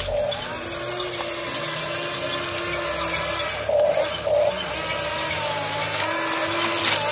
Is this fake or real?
real